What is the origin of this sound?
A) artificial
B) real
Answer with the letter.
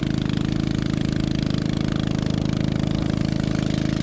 B